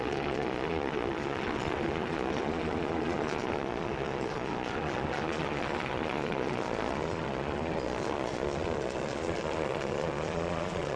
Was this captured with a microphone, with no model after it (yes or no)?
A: no